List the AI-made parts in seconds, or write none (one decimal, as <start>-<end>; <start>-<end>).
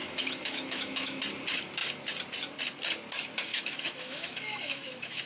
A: 0.0-1.2; 3.5-5.3